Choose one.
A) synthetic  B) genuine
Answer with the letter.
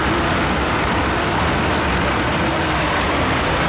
B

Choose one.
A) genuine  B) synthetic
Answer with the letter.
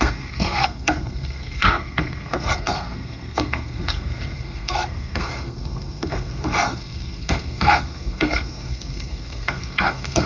B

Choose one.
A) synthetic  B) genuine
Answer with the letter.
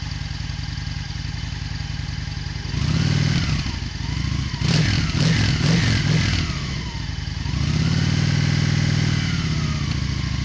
B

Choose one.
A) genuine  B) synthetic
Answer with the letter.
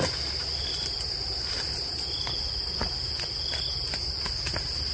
A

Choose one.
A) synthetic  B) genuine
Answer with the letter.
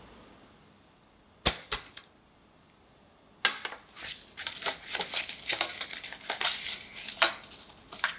B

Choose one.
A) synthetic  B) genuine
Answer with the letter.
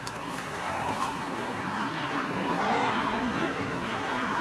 A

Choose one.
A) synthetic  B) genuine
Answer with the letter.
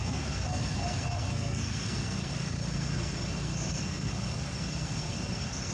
A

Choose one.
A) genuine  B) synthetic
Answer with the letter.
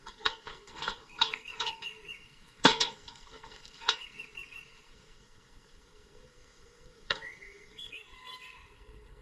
B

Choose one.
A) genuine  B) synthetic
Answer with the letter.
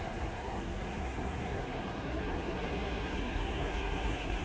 B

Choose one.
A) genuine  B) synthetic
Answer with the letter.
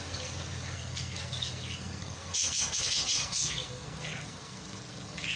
B